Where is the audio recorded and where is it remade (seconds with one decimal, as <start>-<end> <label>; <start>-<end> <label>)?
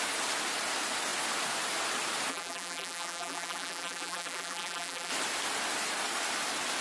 0.0-2.3 recorded; 2.3-5.1 remade; 5.1-6.8 recorded